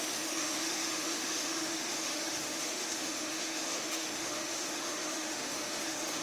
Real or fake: fake